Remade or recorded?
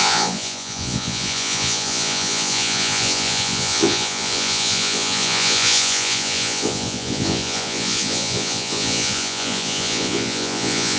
remade